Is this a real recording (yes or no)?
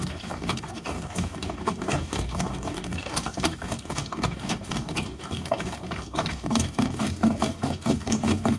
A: no